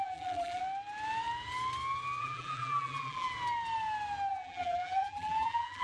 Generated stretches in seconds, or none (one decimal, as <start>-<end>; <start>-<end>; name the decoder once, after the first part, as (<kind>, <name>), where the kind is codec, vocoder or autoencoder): 0.0-0.6 (vocoder, BigVGAN v2); 2.2-3.3; 4.3-5.8